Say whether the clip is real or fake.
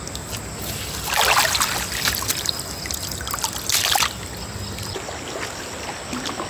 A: real